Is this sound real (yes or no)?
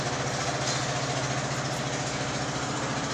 yes